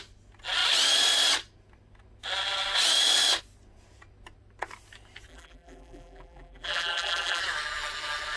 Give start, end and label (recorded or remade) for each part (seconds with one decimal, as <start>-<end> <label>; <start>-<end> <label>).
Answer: 0.0-5.3 recorded; 5.3-7.4 remade; 7.4-8.4 recorded